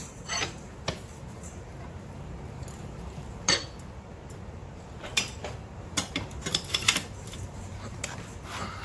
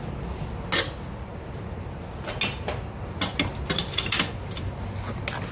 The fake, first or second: first